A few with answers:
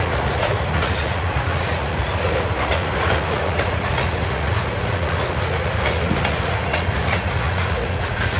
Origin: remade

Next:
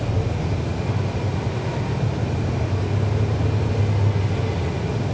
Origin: recorded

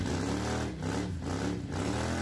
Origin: recorded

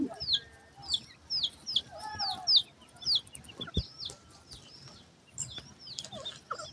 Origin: recorded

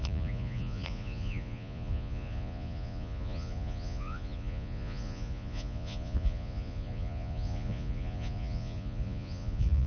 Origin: remade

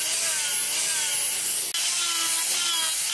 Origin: recorded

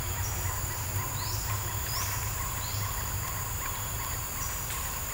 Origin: remade